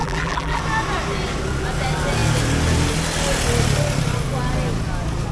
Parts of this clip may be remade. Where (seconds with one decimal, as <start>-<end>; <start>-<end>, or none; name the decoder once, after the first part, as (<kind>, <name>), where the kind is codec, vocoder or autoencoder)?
0.0-0.6 (vocoder, BigVGAN v2)